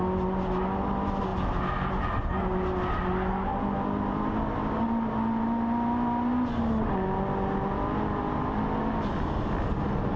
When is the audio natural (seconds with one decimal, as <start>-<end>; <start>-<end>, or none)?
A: 0.0-10.2